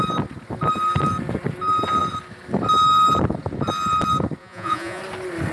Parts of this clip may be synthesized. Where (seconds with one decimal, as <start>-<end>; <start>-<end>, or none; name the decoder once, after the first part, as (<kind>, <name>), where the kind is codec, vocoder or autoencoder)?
4.4-5.0 (vocoder, Vocos)